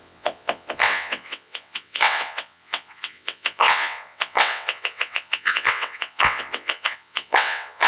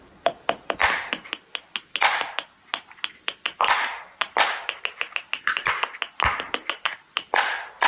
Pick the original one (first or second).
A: second